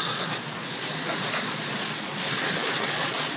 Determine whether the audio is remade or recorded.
remade